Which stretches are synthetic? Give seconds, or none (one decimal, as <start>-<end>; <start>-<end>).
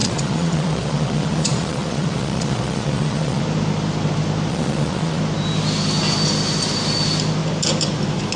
0.0-3.4; 4.5-5.2